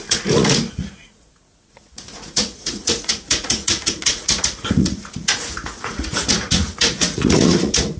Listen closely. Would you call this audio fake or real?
fake